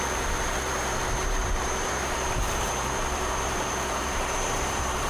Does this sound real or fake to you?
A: fake